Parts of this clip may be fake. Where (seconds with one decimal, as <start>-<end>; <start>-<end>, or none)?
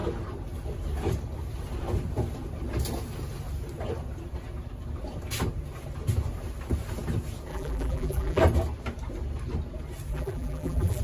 7.5-8.4; 10.1-11.0